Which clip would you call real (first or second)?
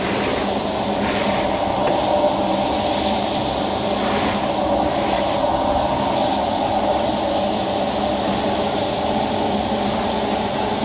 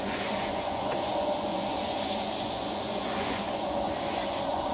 first